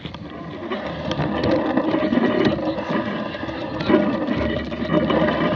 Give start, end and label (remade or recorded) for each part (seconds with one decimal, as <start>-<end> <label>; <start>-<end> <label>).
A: 0.0-0.6 recorded; 0.6-1.8 remade; 1.8-5.6 recorded